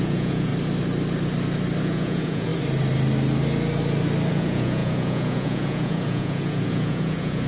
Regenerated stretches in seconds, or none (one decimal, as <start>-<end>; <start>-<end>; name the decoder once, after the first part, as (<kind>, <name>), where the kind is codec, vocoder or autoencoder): 0.0-0.5 (vocoder, Vocos); 1.8-2.5; 4.3-7.5